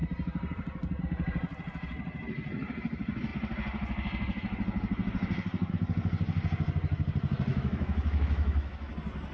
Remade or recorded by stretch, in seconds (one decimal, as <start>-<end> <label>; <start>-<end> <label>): 0.0-7.5 recorded; 7.5-8.9 remade; 8.9-9.3 recorded